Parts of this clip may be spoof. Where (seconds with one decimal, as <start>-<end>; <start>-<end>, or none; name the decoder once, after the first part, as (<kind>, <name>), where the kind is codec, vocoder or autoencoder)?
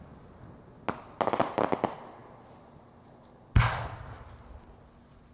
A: none